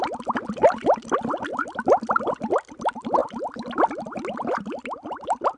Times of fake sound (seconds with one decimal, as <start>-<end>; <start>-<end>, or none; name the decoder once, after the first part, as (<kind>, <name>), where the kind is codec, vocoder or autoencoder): none